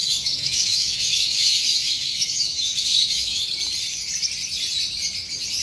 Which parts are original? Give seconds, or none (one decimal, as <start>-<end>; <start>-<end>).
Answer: 3.4-5.6